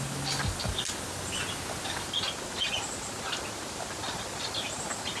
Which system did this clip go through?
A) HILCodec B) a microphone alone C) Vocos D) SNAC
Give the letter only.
B